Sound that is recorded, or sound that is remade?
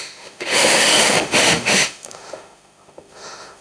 remade